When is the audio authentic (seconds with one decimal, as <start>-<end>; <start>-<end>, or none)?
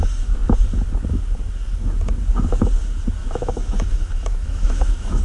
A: 0.0-3.2